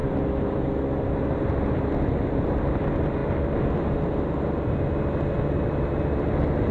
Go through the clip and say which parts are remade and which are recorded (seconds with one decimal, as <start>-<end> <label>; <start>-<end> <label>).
0.0-1.8 remade; 1.8-3.2 recorded; 3.2-5.6 remade; 5.6-6.7 recorded